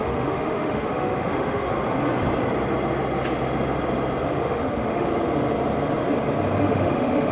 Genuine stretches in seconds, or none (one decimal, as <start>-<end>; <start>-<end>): 1.7-4.2; 5.1-6.6